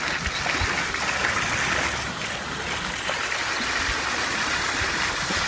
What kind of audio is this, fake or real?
real